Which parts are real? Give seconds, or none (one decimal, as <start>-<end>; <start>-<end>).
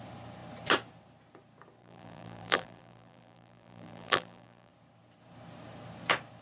0.0-1.8; 4.7-6.4